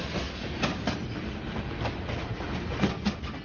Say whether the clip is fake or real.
real